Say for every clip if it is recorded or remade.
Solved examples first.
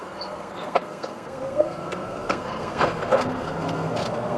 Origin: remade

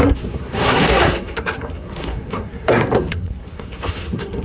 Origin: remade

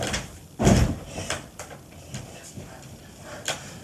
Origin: recorded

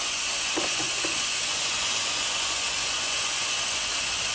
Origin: remade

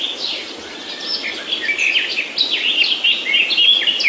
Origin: recorded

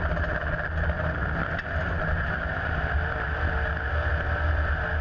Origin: recorded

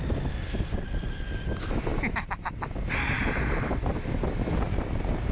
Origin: recorded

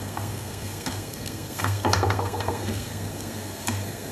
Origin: remade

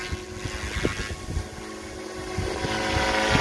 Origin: recorded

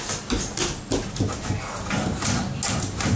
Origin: recorded